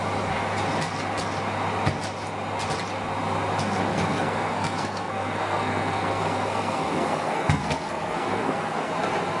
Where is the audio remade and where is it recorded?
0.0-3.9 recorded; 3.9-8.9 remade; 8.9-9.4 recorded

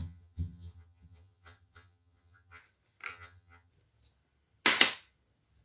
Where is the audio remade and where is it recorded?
0.0-2.6 remade; 2.6-3.1 recorded; 3.1-3.7 remade; 3.7-5.6 recorded

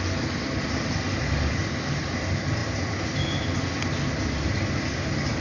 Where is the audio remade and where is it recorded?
0.0-5.4 recorded